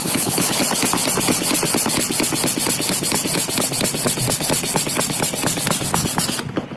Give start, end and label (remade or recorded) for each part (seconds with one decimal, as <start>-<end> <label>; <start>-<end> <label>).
0.0-0.6 remade; 0.6-6.8 recorded